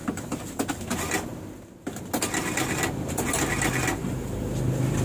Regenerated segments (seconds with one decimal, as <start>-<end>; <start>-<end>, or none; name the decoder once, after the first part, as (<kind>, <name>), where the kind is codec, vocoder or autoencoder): 0.0-0.5 (vocoder, BigVGAN v2)